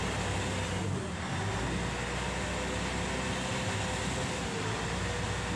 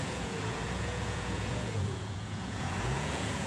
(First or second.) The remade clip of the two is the second